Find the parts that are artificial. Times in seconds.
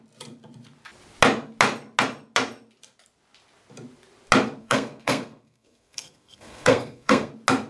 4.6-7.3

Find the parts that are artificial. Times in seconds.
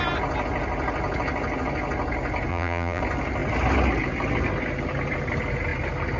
2.5-3.0